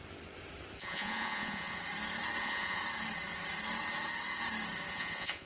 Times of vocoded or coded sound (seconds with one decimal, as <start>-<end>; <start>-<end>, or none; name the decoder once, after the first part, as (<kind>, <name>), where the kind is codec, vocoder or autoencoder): 0.8-1.8 (vocoder, Vocos); 2.4-2.8; 4.9-5.5